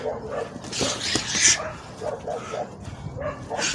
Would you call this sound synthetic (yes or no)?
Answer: no